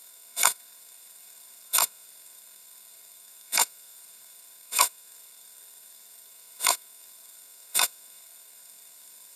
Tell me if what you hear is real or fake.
fake